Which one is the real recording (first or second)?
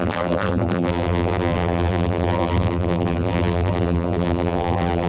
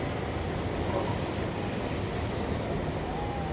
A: second